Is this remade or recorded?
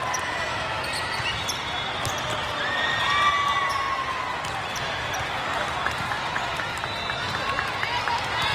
recorded